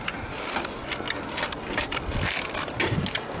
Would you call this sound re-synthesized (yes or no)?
no